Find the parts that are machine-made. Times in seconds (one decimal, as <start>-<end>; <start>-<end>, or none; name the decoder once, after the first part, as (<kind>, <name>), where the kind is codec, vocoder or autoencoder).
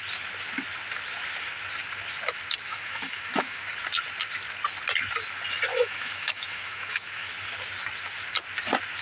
2.7-3.7 (autoencoder, DAC-VAE); 5.7-7.3